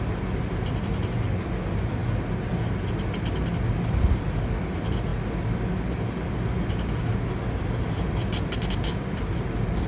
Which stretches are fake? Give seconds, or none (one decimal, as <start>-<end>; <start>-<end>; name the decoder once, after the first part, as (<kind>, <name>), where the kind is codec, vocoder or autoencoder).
none